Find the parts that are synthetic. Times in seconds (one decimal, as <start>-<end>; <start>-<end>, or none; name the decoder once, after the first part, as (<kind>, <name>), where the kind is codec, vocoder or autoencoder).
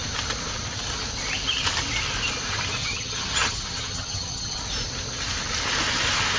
2.8-4.6 (vocoder, HiFi-GAN)